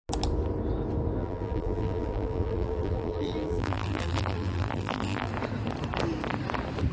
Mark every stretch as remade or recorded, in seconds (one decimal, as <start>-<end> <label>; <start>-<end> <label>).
0.0-1.2 recorded; 1.2-5.3 remade; 5.3-6.9 recorded